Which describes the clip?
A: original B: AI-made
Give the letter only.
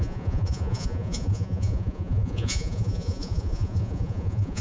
B